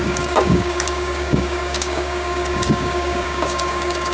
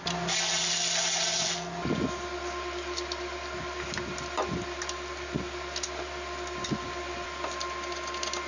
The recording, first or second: second